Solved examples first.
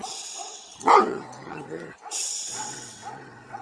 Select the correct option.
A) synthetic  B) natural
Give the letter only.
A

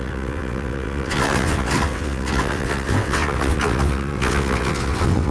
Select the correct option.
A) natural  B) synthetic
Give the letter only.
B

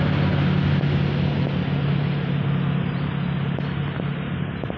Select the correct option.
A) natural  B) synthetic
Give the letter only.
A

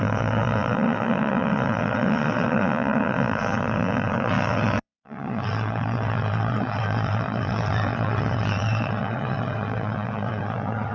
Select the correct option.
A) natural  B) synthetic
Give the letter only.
B